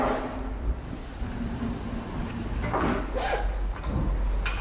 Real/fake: real